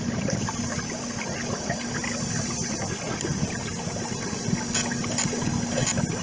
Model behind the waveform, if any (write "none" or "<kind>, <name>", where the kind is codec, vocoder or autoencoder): none